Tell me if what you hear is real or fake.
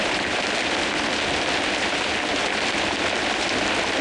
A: real